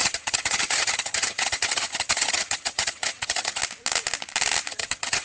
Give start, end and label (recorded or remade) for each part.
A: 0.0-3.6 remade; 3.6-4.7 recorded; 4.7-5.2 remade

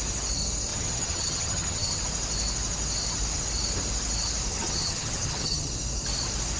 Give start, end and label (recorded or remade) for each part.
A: 0.0-0.7 recorded; 0.7-2.0 remade; 2.0-4.5 recorded; 4.5-5.7 remade; 5.7-6.6 recorded

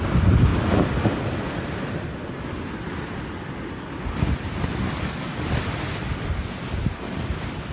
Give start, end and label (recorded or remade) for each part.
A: 0.0-7.7 recorded

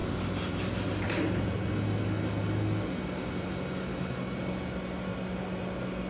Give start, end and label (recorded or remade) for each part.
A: 0.0-6.1 recorded

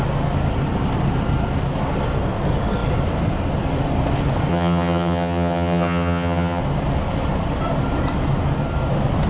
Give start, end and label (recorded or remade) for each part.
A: 0.0-4.5 recorded; 4.5-6.6 remade; 6.6-9.3 recorded

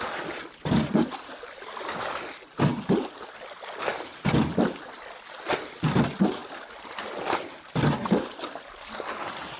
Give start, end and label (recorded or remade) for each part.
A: 0.0-9.6 recorded